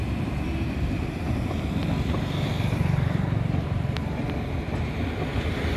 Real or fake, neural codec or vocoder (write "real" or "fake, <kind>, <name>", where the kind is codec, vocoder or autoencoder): fake, vocoder, BigVGAN v2